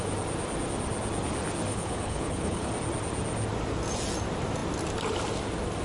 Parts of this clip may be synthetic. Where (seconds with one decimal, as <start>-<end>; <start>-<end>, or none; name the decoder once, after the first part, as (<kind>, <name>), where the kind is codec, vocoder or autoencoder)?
1.7-2.7 (codec, HILCodec)